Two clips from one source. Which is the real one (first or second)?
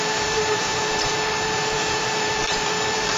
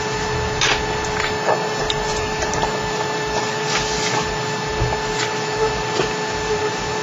second